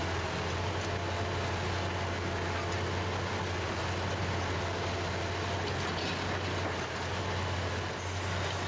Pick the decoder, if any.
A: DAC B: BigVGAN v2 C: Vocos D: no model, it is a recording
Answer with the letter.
D